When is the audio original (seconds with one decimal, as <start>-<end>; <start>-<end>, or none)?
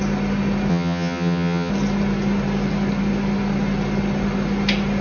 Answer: 0.0-0.7; 1.7-5.0